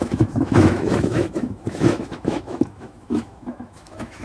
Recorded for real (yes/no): no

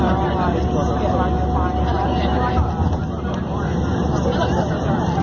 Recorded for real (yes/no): yes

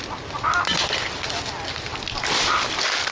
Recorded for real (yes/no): yes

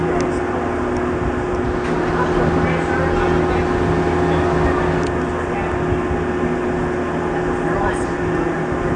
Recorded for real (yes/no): yes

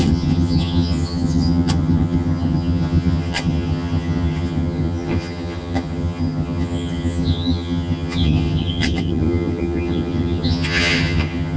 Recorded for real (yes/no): no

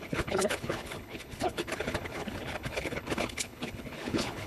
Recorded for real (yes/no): no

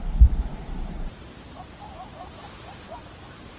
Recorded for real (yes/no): yes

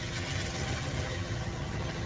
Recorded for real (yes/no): no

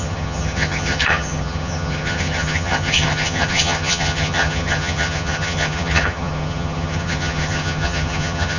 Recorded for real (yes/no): no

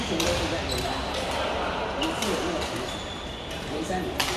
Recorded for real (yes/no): yes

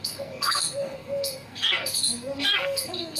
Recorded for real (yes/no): no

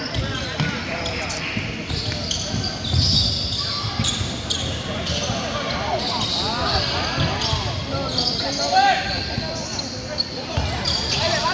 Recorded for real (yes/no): yes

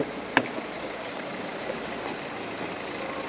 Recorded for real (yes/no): yes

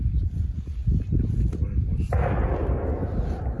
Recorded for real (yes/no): yes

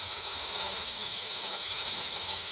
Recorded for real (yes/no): no